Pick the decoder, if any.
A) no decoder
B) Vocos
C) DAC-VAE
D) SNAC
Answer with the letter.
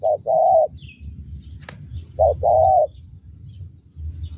A